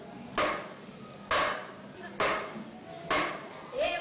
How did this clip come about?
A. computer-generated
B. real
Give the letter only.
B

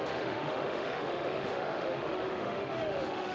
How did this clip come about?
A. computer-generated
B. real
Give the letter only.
A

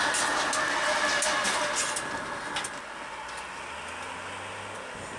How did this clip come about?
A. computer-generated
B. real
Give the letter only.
B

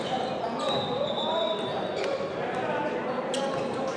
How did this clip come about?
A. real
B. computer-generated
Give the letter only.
A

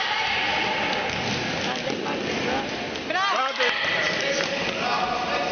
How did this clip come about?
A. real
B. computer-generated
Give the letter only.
A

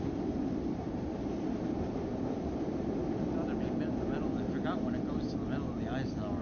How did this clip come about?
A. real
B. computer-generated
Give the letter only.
A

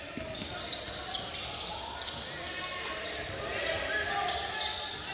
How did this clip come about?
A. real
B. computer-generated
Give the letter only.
A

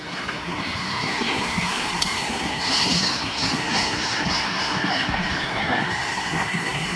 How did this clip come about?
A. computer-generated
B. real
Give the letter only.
A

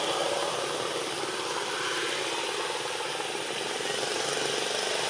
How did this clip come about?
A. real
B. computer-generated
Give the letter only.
A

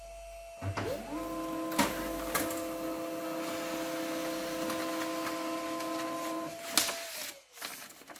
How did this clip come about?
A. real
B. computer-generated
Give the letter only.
A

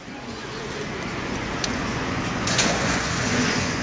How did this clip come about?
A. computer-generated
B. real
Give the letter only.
A